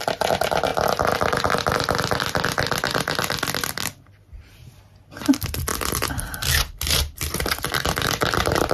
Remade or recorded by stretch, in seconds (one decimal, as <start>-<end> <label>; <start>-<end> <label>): 0.0-5.7 recorded; 5.7-8.7 remade